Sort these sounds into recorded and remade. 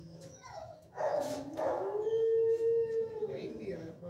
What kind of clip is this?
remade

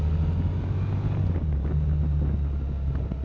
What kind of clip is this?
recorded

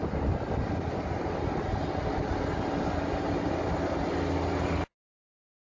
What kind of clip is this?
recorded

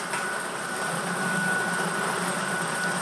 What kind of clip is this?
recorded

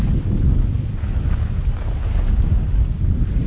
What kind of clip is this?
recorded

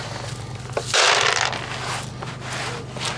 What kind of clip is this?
recorded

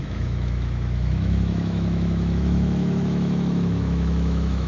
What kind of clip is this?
remade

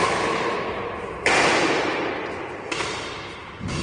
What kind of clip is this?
recorded